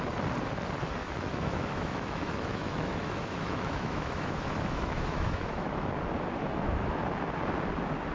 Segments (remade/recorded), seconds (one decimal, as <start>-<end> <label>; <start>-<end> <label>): 0.0-1.0 recorded; 1.0-5.9 remade; 5.9-6.4 recorded; 6.4-7.0 remade; 7.0-8.1 recorded